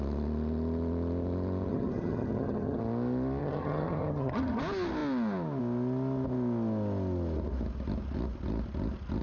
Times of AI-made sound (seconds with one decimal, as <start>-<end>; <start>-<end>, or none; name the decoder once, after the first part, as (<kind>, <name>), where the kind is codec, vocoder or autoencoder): 1.7-2.8 (vocoder, HiFi-GAN); 3.4-4.6